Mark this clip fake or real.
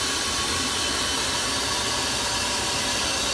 real